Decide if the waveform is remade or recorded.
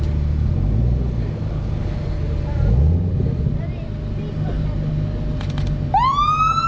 recorded